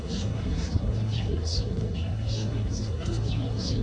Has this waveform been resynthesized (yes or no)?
yes